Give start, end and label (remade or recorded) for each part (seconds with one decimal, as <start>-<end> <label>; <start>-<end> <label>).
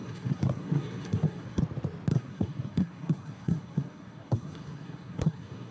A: 0.0-1.6 remade; 1.6-2.1 recorded; 2.1-5.7 remade